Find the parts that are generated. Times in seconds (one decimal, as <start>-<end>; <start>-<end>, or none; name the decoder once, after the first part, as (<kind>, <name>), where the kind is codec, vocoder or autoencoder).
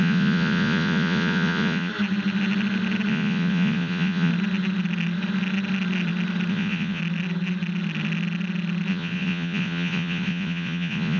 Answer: 0.0-1.9 (vocoder, Vocos); 3.1-4.3; 6.5-7.0; 8.9-11.2